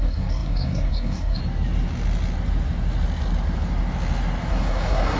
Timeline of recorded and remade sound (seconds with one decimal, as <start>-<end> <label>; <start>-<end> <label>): 0.0-1.4 remade; 1.4-4.5 recorded; 4.5-5.2 remade